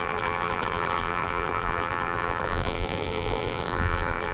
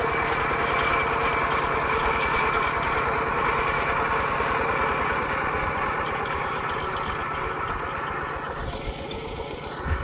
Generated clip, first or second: first